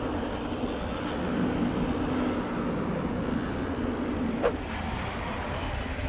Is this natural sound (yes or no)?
yes